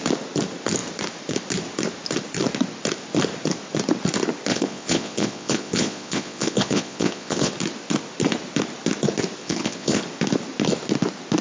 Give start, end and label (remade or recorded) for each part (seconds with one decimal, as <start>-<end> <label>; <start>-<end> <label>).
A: 0.0-4.5 recorded; 4.5-7.5 remade; 7.5-9.4 recorded; 9.4-10.0 remade; 10.0-11.4 recorded